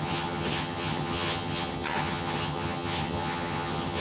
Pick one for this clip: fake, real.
fake